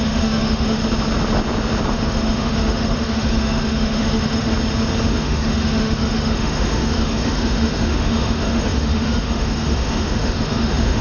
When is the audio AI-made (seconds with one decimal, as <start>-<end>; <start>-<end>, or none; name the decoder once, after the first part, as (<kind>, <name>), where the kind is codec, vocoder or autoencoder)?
0.0-0.8 (autoencoder, DAC-VAE); 1.9-4.5; 5.1-11.0